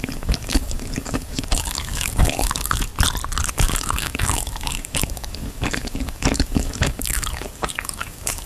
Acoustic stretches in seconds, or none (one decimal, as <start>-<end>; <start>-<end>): 2.9-3.5